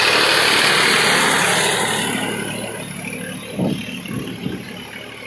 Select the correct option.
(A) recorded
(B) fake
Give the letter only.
A